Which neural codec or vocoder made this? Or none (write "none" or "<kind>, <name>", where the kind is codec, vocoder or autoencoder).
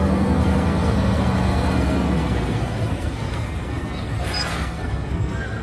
codec, SNAC